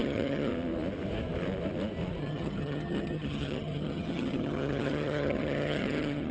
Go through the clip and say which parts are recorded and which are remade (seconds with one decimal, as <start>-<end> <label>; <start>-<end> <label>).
0.0-0.5 remade; 0.5-2.2 recorded; 2.2-6.3 remade